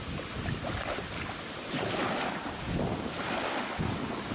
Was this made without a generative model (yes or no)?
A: yes